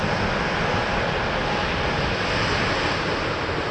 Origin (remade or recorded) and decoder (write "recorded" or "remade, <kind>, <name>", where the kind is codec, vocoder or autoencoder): recorded